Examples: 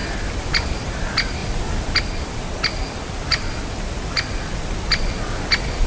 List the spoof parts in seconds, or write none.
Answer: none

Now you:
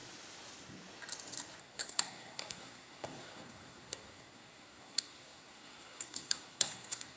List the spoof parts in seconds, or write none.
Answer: 1.6-7.2 (codec, SNAC)

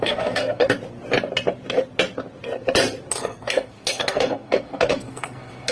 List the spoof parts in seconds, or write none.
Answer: 0.0-0.6 (codec, SNAC); 3.2-5.7

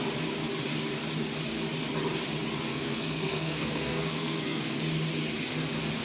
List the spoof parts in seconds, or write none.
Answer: 2.7-4.6 (codec, SNAC)

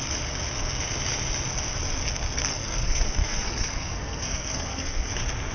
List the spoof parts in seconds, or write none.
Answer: 2.5-5.1 (codec, SNAC)